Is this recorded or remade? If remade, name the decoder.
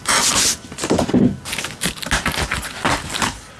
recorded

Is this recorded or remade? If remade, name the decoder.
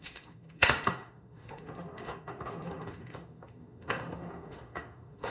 remade, autoencoder, DAC-VAE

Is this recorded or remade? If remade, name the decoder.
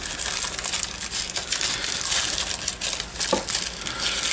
recorded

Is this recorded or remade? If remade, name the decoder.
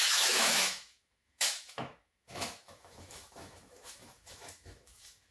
remade, autoencoder, DAC-VAE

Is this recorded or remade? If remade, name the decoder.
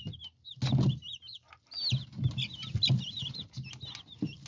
recorded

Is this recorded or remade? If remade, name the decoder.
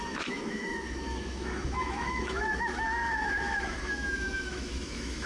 remade, autoencoder, DAC-VAE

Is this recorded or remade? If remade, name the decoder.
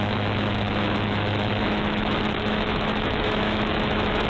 remade, autoencoder, DAC-VAE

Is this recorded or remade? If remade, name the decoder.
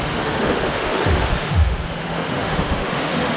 remade, autoencoder, DAC-VAE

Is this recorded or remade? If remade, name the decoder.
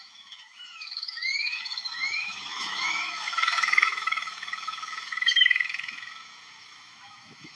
remade, autoencoder, DAC-VAE